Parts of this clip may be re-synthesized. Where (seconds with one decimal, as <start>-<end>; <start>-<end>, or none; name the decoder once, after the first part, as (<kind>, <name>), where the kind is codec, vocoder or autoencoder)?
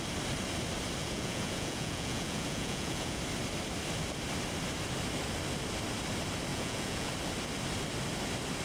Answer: 1.0-3.2 (vocoder, Vocos); 6.5-7.1